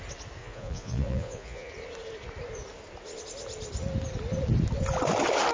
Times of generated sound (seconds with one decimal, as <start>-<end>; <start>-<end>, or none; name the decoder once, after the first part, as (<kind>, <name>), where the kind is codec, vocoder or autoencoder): 0.4-1.7 (vocoder, Vocos)